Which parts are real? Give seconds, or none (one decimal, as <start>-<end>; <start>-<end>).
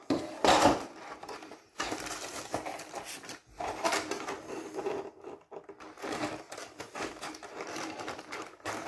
2.7-5.8